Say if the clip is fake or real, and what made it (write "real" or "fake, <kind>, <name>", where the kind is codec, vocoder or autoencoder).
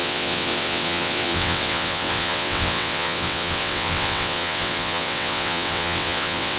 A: fake, vocoder, WaveNeXt